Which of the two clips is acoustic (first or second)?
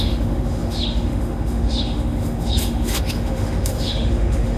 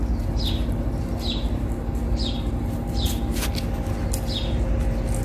second